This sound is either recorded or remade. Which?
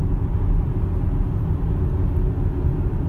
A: recorded